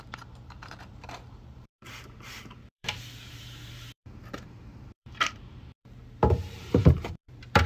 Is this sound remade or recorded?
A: remade